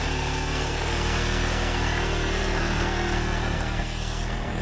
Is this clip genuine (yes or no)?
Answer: no